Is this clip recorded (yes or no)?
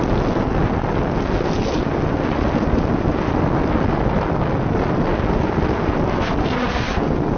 yes